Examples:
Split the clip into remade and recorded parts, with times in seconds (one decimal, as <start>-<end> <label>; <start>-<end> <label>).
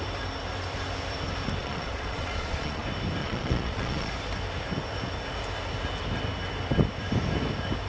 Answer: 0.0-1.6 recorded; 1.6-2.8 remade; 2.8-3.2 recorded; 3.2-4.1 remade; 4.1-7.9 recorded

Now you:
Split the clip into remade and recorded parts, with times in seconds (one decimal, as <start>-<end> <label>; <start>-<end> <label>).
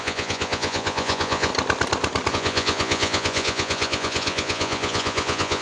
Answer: 0.0-1.5 remade; 1.5-2.3 recorded; 2.3-5.6 remade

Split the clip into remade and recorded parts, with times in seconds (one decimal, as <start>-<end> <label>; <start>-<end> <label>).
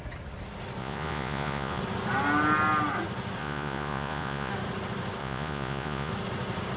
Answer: 0.0-0.8 recorded; 0.8-1.8 remade; 1.8-3.4 recorded; 3.4-4.5 remade; 4.5-5.2 recorded; 5.2-6.1 remade; 6.1-6.8 recorded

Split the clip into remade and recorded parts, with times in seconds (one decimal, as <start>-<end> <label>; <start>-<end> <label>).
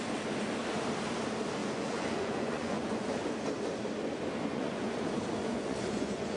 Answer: 0.0-1.6 recorded; 1.6-3.2 remade; 3.2-4.5 recorded; 4.5-5.0 remade; 5.0-5.4 recorded; 5.4-6.4 remade